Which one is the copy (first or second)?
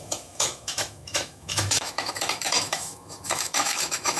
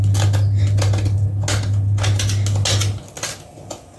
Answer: first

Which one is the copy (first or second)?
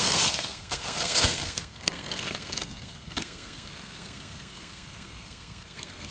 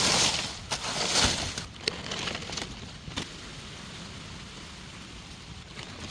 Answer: first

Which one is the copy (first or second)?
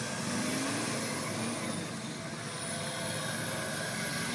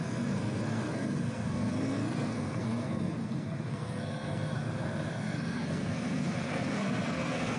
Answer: second